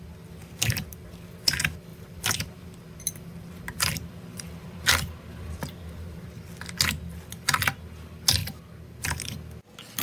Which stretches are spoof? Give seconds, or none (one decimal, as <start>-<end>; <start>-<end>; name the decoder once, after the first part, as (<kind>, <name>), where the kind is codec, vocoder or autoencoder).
1.9-6.3 (vocoder, BigVGAN v2)